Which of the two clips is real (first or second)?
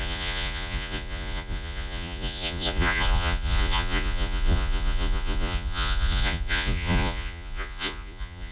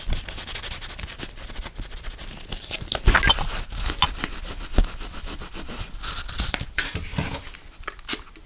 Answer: second